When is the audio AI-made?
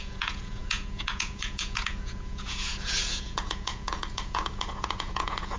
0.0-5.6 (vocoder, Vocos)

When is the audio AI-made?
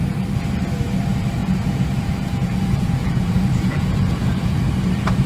1.4-4.6 (vocoder, Vocos)